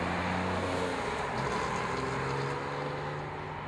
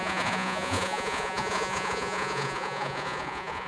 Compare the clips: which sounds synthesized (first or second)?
second